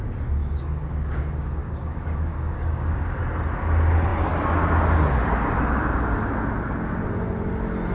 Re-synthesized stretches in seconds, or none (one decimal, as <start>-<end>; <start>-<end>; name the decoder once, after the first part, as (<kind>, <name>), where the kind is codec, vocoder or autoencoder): 0.4-1.2 (codec, DAC); 1.6-3.2